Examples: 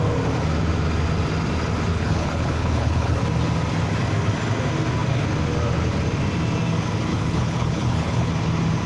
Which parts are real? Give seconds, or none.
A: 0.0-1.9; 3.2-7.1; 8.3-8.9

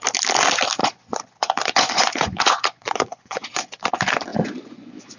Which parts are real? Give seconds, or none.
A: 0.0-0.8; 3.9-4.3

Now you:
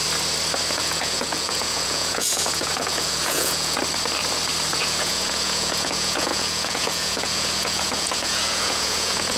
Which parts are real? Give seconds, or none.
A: 0.0-0.7; 3.8-4.7